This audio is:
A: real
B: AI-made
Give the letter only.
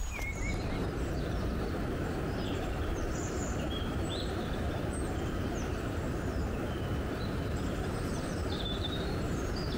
B